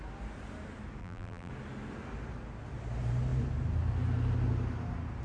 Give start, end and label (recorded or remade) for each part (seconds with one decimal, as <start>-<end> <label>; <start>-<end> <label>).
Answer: 0.0-1.0 recorded; 1.0-1.5 remade; 1.5-5.2 recorded